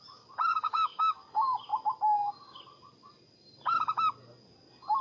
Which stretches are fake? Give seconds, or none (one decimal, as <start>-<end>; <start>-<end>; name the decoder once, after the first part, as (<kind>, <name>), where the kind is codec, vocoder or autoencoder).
0.5-1.0 (codec, DAC)